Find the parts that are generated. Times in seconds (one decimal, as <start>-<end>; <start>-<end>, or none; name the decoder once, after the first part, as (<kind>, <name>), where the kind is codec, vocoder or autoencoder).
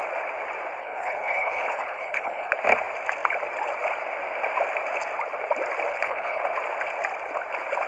0.8-2.5 (codec, HILCodec); 5.9-6.4